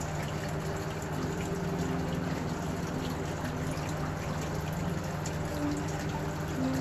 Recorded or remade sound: recorded